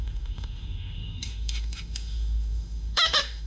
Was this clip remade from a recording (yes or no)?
yes